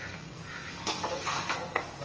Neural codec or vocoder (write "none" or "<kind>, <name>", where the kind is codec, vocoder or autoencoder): codec, SNAC